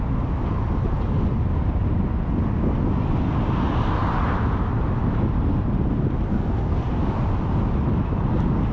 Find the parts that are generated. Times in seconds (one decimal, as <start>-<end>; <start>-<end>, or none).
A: 6.3-7.0